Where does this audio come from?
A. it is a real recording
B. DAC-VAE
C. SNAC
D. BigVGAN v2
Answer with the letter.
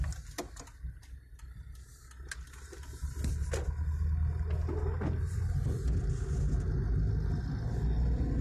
A